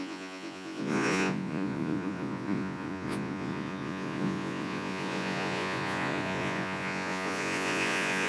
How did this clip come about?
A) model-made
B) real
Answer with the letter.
A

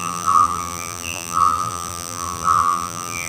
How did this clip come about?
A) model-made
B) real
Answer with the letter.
A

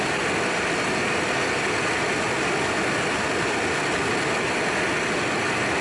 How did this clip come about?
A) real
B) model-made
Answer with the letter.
A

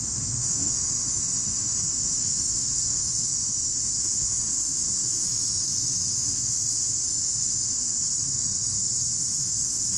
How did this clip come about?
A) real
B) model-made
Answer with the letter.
B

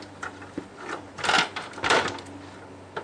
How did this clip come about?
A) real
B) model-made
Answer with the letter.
B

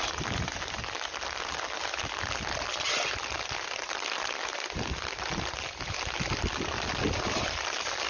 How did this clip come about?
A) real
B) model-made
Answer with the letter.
A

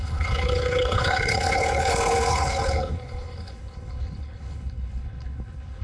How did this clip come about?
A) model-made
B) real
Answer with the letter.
A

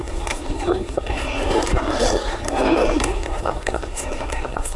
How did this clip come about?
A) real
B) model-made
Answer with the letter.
B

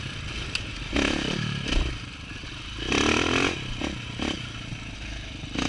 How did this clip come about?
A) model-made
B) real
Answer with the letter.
B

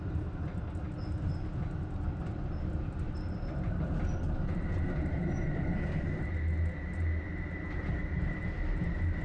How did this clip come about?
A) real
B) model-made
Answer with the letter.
A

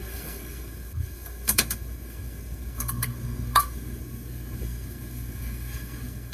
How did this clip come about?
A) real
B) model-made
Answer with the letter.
B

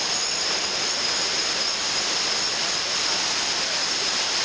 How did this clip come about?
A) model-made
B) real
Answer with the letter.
B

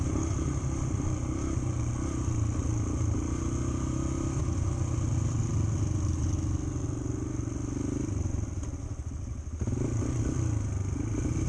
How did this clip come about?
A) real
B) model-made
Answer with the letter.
A